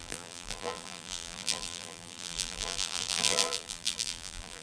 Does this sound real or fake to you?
fake